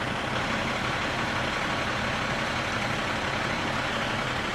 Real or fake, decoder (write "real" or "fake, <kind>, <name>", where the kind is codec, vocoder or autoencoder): real